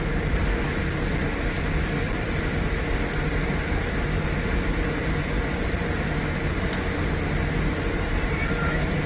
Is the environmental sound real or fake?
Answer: real